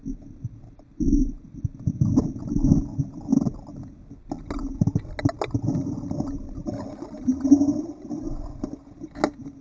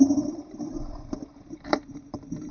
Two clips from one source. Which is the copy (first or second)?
second